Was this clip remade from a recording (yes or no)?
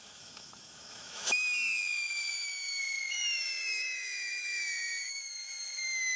yes